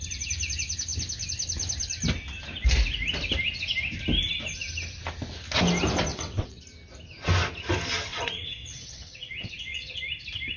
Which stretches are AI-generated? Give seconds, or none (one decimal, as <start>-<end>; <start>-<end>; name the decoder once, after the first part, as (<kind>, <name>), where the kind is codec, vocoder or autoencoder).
6.1-6.6 (vocoder, WaveNeXt); 8.1-10.0